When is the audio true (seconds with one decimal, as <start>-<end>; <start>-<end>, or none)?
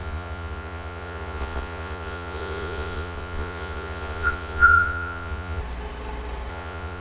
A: 5.6-6.5